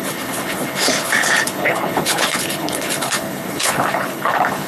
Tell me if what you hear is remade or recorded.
remade